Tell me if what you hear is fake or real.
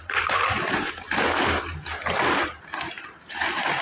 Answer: fake